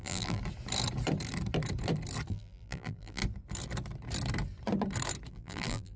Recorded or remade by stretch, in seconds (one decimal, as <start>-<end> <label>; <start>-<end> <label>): 0.0-0.4 remade; 0.4-2.3 recorded; 2.3-3.2 remade; 3.2-5.3 recorded; 5.3-6.0 remade